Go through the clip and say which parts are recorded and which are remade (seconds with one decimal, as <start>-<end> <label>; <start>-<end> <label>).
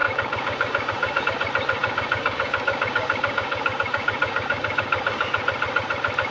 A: 0.0-1.2 remade; 1.2-1.8 recorded; 1.8-5.3 remade; 5.3-6.3 recorded